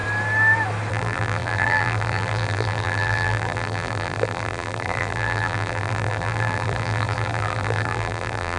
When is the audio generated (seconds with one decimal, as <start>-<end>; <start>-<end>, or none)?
0.9-8.6